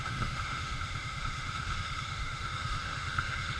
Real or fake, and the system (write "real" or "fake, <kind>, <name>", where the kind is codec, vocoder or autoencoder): fake, autoencoder, DAC-VAE